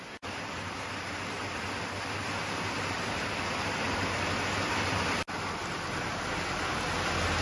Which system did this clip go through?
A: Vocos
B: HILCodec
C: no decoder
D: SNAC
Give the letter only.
C